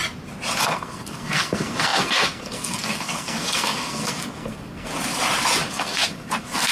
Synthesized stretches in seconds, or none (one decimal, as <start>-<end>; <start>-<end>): 0.6-4.9; 5.7-6.7